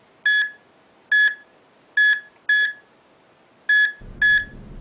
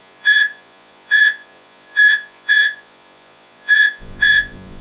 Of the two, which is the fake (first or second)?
second